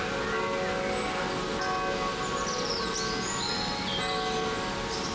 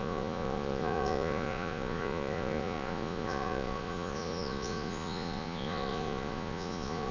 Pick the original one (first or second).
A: first